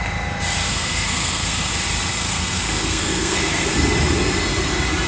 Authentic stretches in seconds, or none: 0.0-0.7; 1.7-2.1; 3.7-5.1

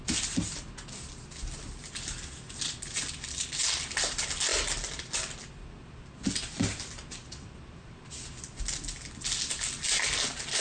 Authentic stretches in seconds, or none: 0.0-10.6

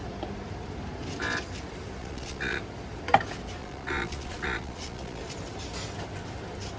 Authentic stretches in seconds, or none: 0.0-2.0; 2.6-3.6; 5.2-6.8

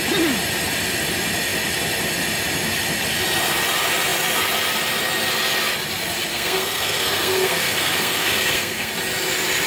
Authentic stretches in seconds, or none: 0.0-6.3; 8.9-9.7